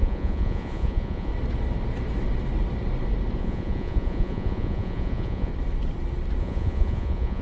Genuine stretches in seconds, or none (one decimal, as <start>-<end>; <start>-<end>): 1.3-3.4; 5.5-6.4